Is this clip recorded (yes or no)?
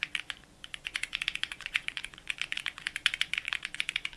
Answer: no